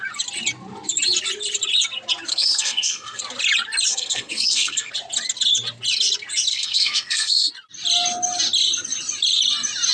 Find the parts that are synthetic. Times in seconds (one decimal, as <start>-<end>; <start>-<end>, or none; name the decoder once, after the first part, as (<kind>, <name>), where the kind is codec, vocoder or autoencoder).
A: 2.3-3.2 (codec, SNAC); 3.9-4.9; 6.5-7.5